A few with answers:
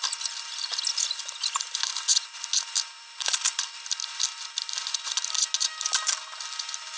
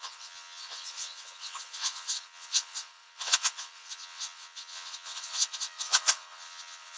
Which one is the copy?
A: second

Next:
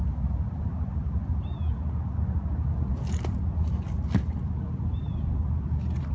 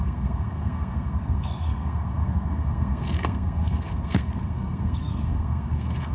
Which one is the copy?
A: second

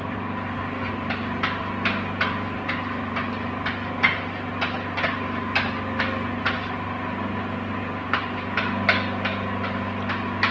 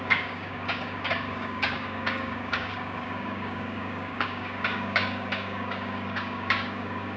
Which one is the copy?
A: second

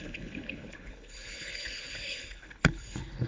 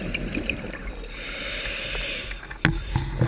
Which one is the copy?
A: first